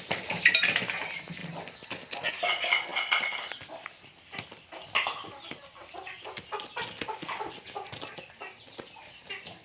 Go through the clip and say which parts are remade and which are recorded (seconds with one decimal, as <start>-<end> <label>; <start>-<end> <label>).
0.0-9.6 recorded